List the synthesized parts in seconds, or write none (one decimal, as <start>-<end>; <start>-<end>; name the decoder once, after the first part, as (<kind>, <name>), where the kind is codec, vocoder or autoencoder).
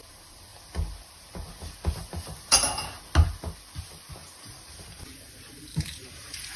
4.2-5.0 (vocoder, BigVGAN v2); 5.7-6.6